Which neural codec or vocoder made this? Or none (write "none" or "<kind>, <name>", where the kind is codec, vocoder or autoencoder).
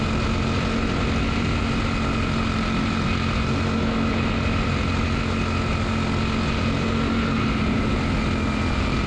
none